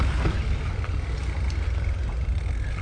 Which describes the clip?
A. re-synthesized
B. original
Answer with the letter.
B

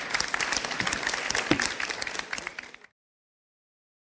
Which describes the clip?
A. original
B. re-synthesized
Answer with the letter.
A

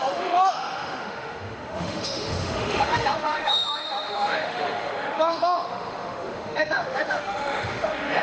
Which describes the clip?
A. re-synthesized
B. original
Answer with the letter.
A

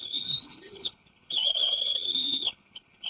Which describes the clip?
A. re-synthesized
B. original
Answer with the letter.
A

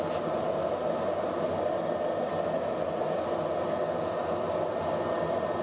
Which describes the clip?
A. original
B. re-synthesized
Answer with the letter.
A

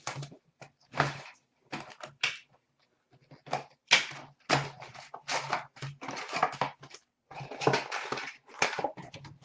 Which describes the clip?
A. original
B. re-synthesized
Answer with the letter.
A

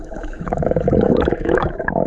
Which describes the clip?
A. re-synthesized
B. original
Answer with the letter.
A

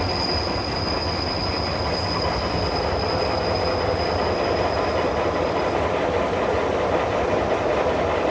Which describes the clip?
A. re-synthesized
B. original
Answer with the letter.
B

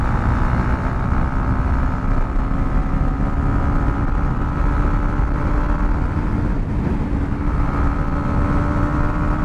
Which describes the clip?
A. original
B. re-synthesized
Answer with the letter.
A